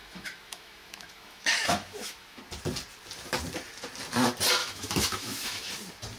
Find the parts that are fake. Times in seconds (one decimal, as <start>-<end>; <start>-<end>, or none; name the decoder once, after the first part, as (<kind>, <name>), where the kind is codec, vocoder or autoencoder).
0.0-2.4 (autoencoder, DAC-VAE); 4.6-5.7